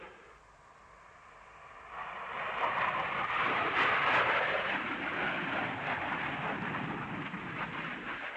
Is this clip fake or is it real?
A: fake